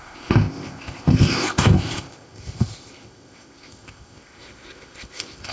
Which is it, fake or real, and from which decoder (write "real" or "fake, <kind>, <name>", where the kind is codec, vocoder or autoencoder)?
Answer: fake, codec, ZipCodec